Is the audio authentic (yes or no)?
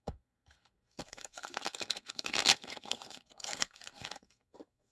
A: no